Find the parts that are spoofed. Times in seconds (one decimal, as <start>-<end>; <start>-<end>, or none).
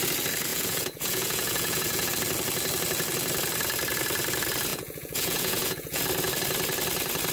0.5-2.1; 4.7-6.0